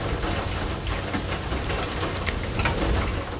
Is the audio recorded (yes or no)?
yes